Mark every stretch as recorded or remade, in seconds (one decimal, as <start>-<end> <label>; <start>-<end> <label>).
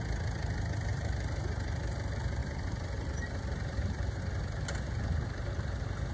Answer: 0.0-0.9 recorded; 0.9-1.8 remade; 1.8-2.4 recorded; 2.4-4.2 remade; 4.2-6.1 recorded